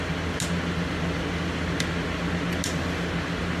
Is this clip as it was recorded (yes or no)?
yes